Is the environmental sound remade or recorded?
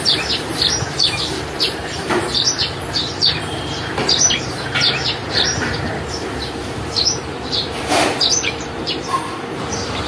remade